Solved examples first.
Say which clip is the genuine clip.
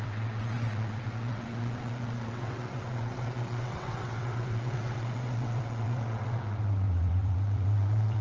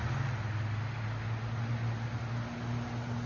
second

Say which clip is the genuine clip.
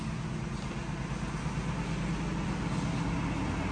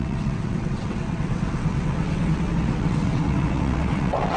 first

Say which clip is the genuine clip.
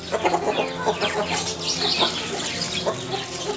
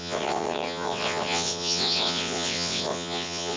first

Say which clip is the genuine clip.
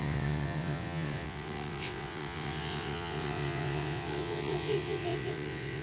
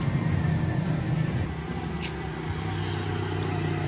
second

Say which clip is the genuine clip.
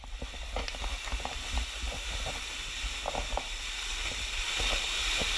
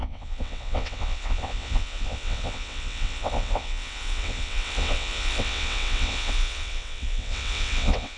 first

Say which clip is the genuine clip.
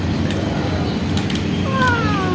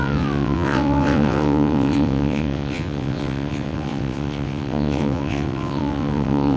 first